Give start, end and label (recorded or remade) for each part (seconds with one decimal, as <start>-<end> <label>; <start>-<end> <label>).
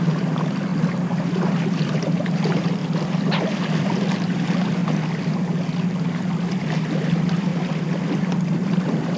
0.0-0.7 remade; 0.7-1.3 recorded; 1.3-2.8 remade; 2.8-3.5 recorded; 3.5-4.8 remade; 4.8-6.1 recorded; 6.1-7.5 remade; 7.5-8.2 recorded; 8.2-9.2 remade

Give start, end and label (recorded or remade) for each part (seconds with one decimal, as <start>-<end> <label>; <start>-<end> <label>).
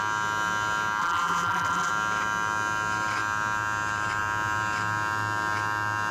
0.0-1.0 recorded; 1.0-1.9 remade; 1.9-6.1 recorded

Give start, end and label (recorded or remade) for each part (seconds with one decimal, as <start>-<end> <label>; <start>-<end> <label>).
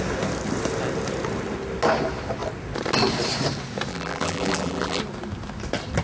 0.0-3.9 recorded; 3.9-5.0 remade; 5.0-6.0 recorded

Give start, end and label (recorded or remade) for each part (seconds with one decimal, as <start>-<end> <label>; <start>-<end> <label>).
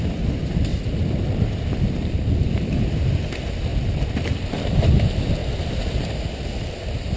0.0-0.7 recorded; 0.7-3.0 remade; 3.0-3.7 recorded; 3.7-4.8 remade; 4.8-5.4 recorded; 5.4-6.1 remade; 6.1-7.2 recorded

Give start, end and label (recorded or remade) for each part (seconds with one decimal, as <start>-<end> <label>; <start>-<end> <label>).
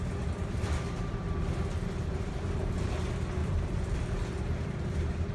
0.0-3.4 recorded; 3.4-4.4 remade; 4.4-5.3 recorded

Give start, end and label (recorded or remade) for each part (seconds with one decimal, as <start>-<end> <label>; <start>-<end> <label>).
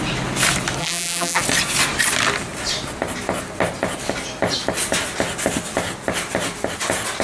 0.0-0.8 recorded; 0.8-1.4 remade; 1.4-7.2 recorded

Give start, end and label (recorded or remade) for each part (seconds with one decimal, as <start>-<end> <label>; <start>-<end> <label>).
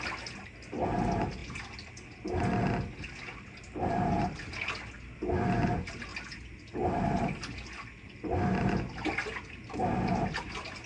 0.0-10.9 recorded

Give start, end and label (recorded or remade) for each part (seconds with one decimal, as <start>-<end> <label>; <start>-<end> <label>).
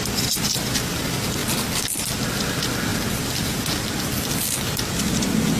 0.0-1.4 recorded; 1.4-2.1 remade; 2.1-2.9 recorded; 2.9-4.3 remade; 4.3-5.6 recorded